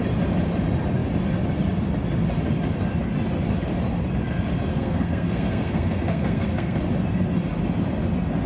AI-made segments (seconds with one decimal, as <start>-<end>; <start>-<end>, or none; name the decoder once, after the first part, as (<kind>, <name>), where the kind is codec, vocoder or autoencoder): 4.7-6.8 (codec, SNAC)